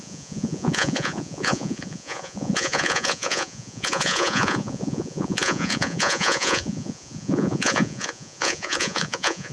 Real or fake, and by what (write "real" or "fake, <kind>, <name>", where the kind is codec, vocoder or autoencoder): fake, vocoder, Vocos